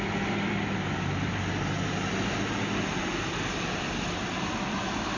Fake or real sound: fake